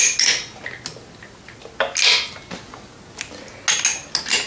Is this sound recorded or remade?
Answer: recorded